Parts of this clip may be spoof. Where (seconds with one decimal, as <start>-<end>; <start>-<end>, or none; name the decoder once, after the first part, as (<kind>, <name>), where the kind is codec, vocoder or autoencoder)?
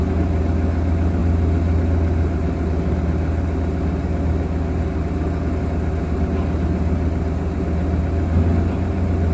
none